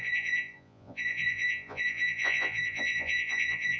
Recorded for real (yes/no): no